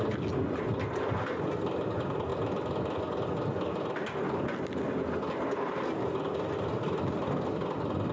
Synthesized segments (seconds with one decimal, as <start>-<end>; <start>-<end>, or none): none